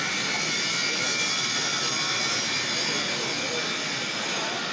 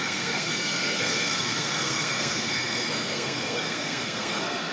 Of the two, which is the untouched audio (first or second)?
first